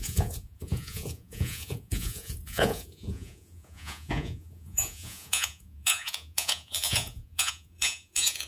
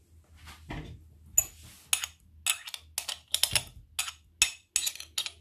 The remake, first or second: first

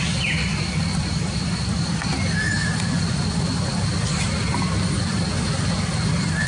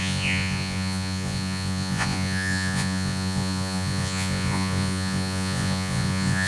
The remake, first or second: second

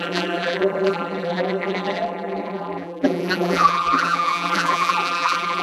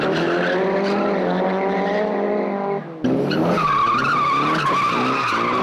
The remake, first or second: first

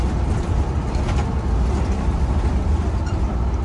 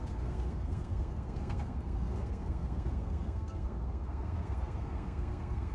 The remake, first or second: second